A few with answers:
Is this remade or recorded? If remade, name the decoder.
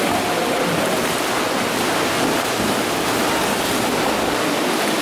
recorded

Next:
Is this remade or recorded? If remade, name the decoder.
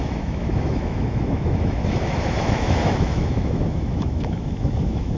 remade, autoencoder, DAC-VAE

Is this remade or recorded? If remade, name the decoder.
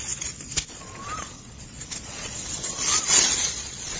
remade, vocoder, Vocos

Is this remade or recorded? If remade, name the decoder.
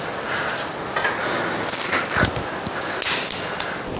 recorded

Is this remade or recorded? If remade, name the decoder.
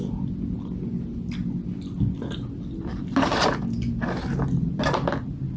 recorded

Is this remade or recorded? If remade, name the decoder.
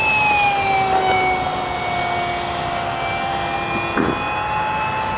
recorded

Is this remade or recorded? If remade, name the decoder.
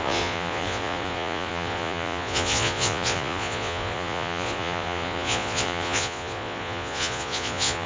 remade, vocoder, Vocos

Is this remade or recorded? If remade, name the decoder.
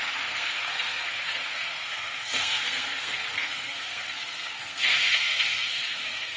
remade, codec, SNAC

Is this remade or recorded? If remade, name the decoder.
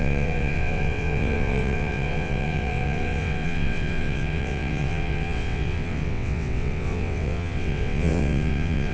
remade, vocoder, WaveNeXt